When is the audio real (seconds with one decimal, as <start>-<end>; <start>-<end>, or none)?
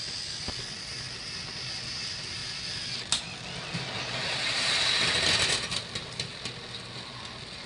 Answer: 0.0-7.7